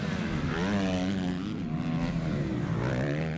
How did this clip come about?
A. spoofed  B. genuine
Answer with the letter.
B